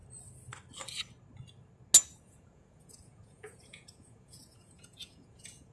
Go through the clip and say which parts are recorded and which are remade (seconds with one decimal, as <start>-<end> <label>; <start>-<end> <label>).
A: 0.0-2.2 recorded; 2.2-5.7 remade